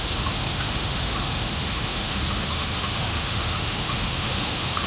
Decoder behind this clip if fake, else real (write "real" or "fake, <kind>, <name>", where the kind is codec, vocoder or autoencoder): fake, autoencoder, DAC-VAE